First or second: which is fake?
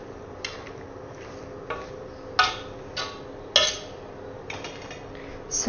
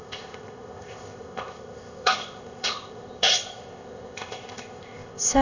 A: second